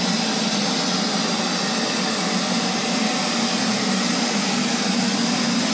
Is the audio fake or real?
real